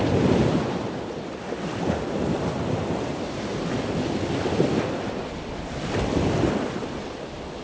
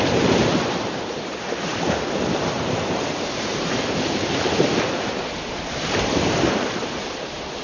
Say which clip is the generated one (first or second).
second